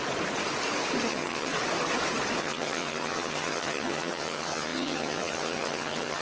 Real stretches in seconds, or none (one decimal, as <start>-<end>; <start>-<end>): 0.0-1.1; 1.5-2.4